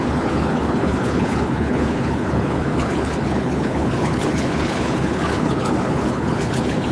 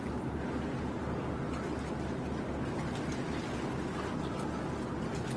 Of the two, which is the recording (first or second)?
second